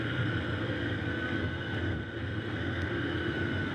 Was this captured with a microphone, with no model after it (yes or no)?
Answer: no